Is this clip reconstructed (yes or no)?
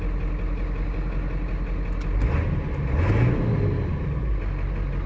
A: no